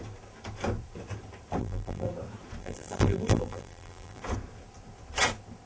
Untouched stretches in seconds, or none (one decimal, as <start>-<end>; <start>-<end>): 0.0-1.6; 2.1-2.6; 4.2-5.7